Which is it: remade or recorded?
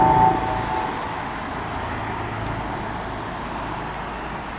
recorded